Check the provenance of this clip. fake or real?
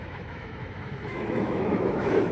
fake